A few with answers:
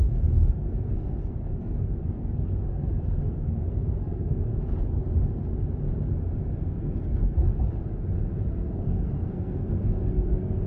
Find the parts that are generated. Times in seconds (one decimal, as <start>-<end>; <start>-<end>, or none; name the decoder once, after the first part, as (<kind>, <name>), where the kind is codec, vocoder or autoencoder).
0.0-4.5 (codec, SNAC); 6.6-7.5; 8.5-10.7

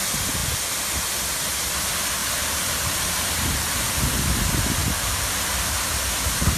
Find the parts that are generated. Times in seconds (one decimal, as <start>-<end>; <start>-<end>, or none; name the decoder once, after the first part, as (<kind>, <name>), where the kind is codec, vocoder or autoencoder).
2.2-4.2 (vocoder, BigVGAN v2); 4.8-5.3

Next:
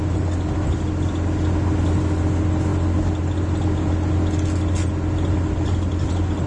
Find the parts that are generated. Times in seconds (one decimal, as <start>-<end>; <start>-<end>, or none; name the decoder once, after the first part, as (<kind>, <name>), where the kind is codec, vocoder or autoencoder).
none